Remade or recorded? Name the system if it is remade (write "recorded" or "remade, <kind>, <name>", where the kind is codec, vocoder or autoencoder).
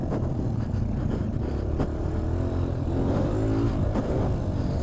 remade, vocoder, BigVGAN v2